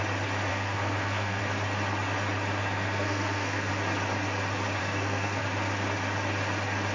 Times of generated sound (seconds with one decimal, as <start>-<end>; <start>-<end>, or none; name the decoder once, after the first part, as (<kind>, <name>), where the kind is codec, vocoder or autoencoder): 0.5-1.4 (codec, SNAC); 2.6-3.7; 4.8-5.4